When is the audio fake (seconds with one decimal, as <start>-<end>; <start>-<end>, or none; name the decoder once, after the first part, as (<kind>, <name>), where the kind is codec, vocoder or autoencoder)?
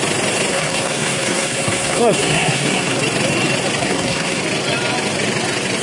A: 0.5-3.0 (codec, SNAC); 3.8-4.4